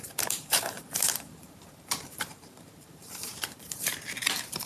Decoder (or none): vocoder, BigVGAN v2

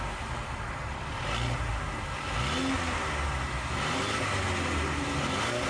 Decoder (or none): none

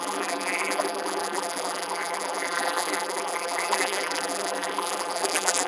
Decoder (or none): vocoder, BigVGAN v2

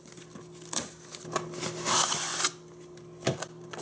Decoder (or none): none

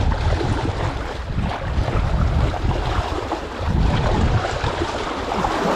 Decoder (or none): vocoder, BigVGAN v2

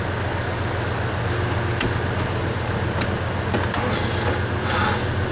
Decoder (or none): none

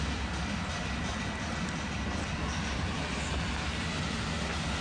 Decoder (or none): vocoder, BigVGAN v2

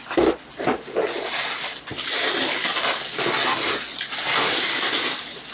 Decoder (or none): none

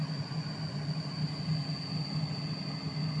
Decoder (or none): none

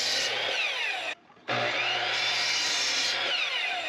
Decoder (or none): vocoder, BigVGAN v2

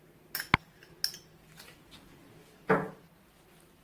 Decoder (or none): none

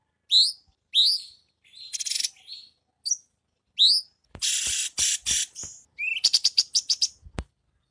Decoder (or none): none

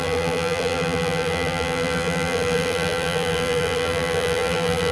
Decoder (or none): vocoder, BigVGAN v2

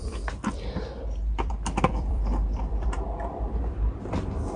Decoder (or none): vocoder, BigVGAN v2